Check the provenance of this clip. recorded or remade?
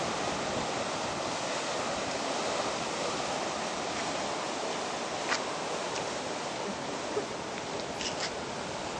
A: recorded